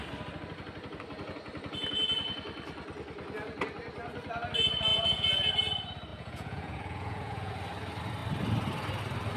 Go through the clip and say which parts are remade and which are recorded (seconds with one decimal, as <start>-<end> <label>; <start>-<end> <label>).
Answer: 0.0-4.9 recorded; 4.9-5.5 remade; 5.5-6.1 recorded; 6.1-7.5 remade; 7.5-9.4 recorded